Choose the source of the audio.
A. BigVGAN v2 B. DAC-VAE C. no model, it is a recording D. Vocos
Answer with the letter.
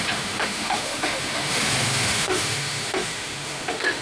B